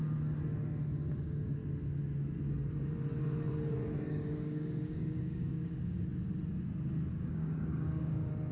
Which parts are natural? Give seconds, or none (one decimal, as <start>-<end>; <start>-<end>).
0.0-1.1; 1.6-4.1; 6.1-7.1

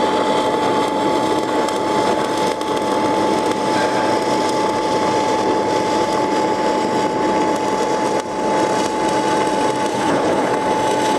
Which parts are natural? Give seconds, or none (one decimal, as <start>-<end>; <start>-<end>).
0.0-9.9; 10.5-11.2

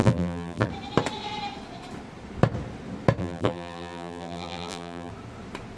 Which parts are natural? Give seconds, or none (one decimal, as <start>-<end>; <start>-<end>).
0.7-3.2; 5.1-5.8

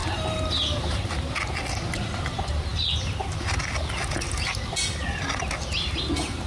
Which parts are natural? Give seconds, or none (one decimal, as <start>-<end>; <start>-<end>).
1.1-6.5

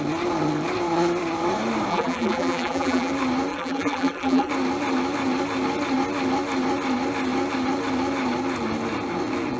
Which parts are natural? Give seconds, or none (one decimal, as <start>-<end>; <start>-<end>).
0.0-1.9; 3.1-3.5; 4.5-9.6

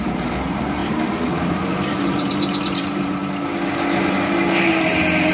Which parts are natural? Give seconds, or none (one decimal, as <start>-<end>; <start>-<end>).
0.8-1.3; 3.2-5.3

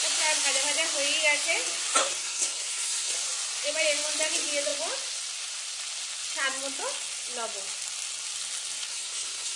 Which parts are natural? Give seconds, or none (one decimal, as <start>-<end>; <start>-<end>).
0.0-2.0; 3.1-8.9